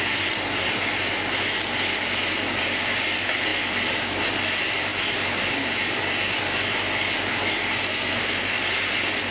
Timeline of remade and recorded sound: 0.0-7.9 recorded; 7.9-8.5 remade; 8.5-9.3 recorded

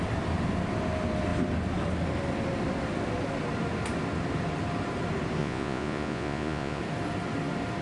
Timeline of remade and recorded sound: 0.0-5.4 recorded; 5.4-6.8 remade; 6.8-7.8 recorded

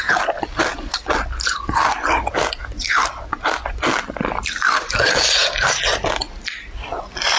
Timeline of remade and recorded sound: 0.0-7.4 recorded